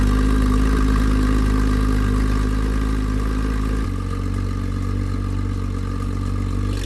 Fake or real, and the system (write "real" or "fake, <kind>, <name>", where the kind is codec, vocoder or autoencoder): real